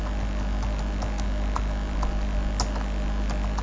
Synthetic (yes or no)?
no